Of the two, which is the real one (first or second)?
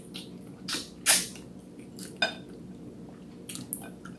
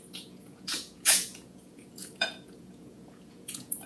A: first